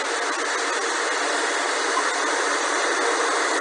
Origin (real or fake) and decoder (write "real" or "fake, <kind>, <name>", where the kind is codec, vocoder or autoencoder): real